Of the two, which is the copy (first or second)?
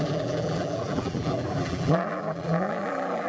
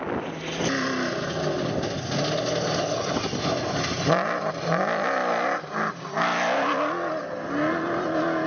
first